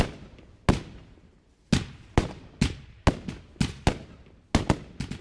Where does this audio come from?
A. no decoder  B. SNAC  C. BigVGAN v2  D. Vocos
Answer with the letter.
A